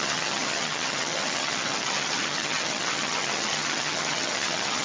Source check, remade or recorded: remade